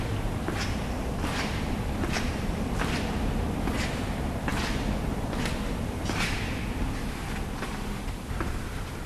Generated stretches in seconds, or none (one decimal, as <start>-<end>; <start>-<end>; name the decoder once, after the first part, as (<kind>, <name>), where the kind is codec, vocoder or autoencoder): 0.0-9.1 (vocoder, BigVGAN v2)